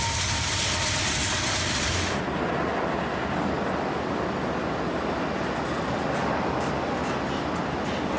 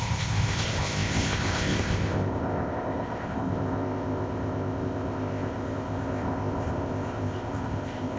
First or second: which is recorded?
first